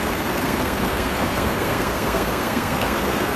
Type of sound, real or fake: fake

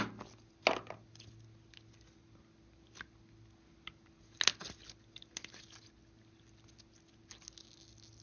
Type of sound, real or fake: real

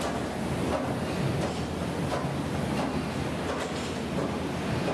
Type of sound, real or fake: real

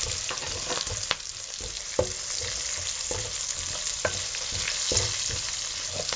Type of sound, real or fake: real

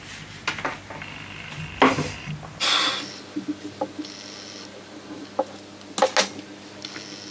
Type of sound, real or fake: real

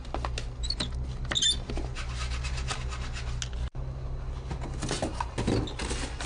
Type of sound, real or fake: real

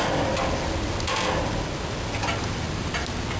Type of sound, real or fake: real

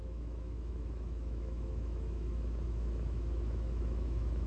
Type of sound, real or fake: fake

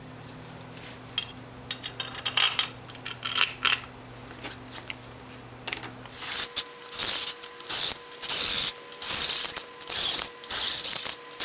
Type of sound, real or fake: real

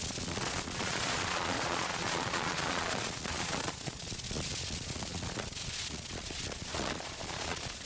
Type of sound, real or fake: fake